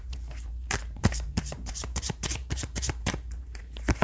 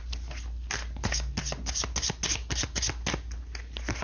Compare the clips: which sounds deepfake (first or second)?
first